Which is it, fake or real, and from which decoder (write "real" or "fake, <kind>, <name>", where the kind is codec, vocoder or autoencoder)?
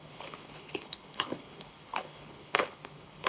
fake, codec, HILCodec